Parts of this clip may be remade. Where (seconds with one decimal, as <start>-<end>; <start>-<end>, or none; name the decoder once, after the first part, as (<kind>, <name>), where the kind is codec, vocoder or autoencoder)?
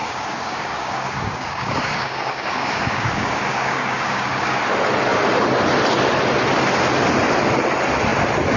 0.0-4.6 (codec, DAC)